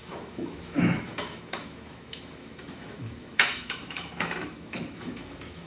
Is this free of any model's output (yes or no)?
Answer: no